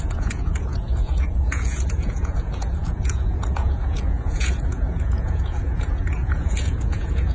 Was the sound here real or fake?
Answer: fake